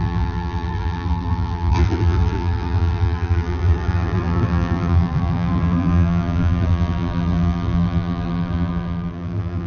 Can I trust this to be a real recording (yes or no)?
no